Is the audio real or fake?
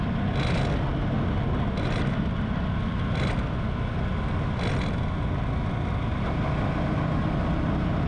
real